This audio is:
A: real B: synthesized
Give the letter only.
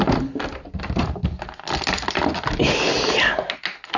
A